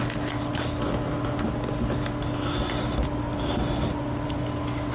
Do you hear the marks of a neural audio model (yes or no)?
no